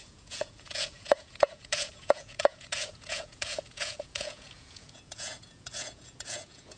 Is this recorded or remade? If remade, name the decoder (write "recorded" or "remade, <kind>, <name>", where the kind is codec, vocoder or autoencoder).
remade, vocoder, Vocos